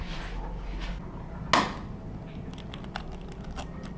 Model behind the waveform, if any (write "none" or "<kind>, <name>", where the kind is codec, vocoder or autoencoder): none